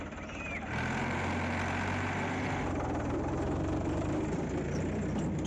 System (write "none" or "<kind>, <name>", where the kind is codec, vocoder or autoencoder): none